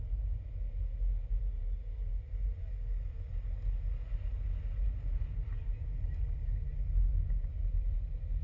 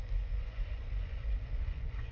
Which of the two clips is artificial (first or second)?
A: second